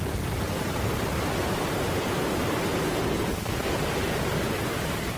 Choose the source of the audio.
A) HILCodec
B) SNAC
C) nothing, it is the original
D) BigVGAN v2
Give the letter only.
D